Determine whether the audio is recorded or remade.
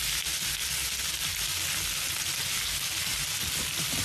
recorded